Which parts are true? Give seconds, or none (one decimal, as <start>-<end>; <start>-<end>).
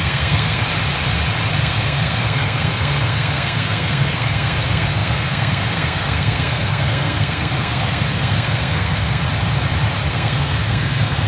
0.6-1.6; 9.2-10.1